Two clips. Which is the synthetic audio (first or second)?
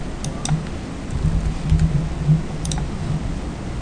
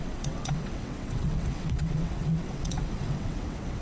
second